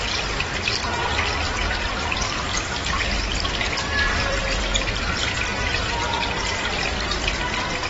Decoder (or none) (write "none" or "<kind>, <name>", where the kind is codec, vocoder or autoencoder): vocoder, BigVGAN v2